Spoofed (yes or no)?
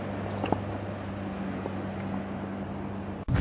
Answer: no